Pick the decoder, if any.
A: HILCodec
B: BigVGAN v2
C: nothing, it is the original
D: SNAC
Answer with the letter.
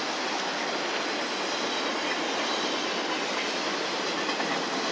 C